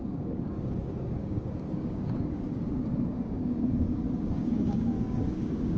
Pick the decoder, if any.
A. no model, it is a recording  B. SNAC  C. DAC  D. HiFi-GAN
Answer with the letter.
C